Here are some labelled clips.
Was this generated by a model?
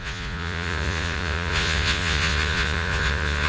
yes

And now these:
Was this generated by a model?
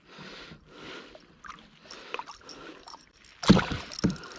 no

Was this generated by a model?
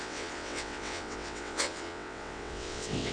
yes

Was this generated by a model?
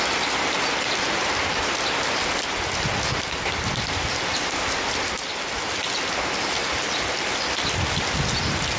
no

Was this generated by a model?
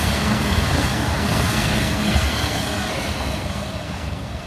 yes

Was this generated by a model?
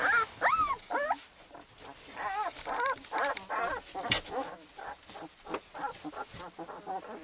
no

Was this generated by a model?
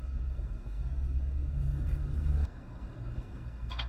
yes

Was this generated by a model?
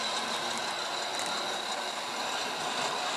no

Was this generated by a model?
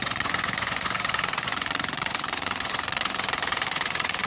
yes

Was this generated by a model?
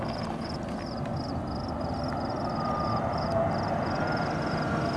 no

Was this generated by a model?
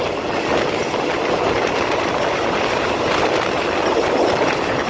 no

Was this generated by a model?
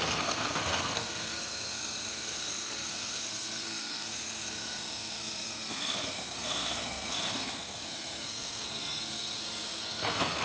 yes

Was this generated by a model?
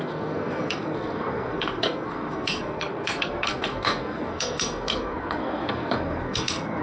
yes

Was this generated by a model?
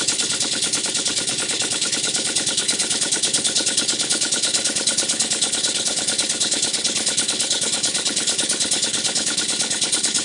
yes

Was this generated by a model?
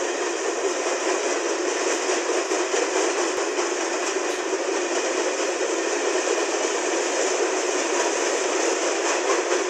no